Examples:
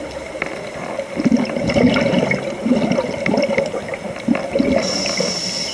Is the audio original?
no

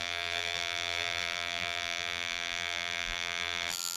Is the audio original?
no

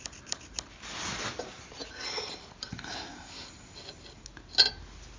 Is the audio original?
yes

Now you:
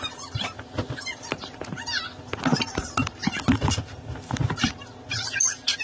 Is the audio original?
yes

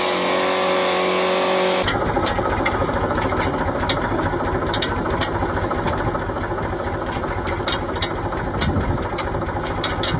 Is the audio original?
yes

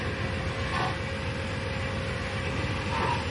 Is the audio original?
yes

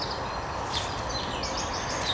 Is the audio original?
yes